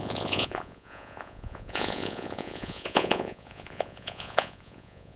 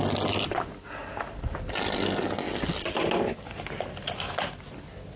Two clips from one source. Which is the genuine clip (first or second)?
second